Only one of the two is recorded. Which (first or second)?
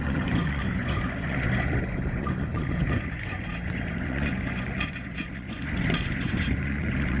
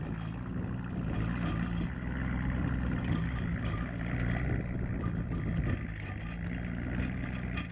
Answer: second